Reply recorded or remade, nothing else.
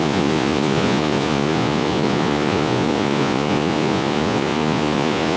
remade